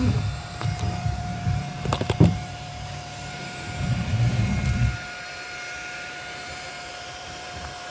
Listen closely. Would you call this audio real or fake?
fake